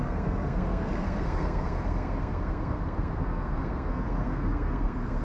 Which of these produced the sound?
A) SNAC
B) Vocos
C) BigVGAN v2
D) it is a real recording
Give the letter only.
A